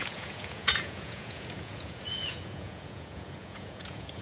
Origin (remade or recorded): remade